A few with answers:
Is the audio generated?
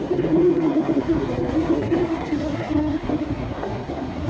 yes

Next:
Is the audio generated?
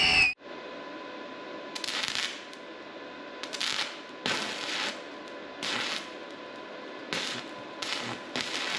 no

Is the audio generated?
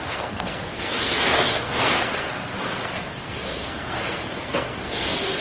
yes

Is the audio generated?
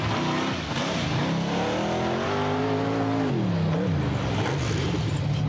no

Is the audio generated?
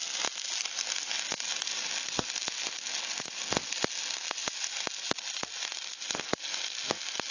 no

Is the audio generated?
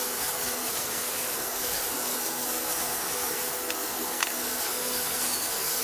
yes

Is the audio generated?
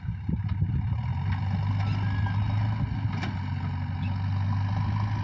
no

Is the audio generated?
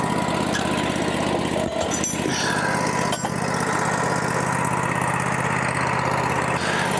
no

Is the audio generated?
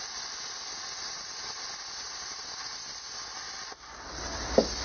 no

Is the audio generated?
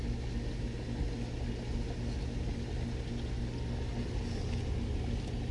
no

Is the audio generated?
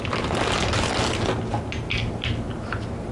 no